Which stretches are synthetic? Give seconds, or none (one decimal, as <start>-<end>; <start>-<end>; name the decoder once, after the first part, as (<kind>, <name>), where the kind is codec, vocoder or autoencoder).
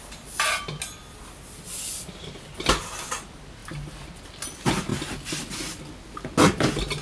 none